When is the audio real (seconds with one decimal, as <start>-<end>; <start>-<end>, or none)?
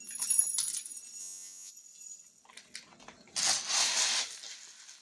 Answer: 0.0-1.2; 1.7-5.0